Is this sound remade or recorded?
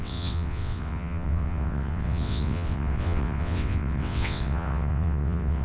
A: remade